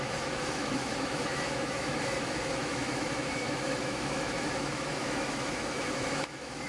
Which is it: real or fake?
fake